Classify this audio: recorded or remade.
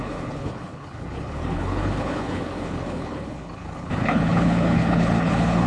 remade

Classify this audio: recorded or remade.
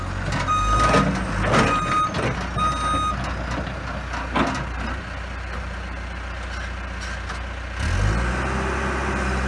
recorded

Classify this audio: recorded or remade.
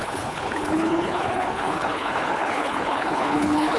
remade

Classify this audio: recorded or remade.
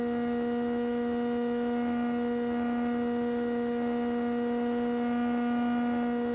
recorded